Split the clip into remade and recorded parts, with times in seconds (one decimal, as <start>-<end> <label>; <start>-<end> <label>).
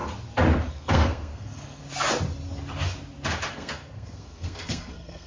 0.0-0.7 recorded; 0.7-1.8 remade; 1.8-3.5 recorded; 3.5-5.3 remade